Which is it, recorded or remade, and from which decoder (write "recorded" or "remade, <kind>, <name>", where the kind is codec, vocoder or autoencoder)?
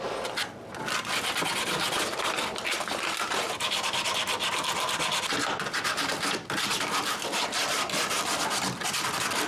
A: remade, vocoder, BigVGAN v2